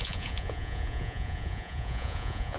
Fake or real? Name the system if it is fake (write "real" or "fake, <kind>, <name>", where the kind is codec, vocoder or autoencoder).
fake, vocoder, Vocos